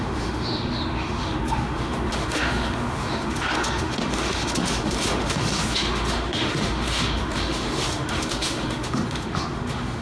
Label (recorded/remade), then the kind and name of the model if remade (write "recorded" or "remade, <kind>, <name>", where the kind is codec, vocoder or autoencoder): remade, autoencoder, DAC-VAE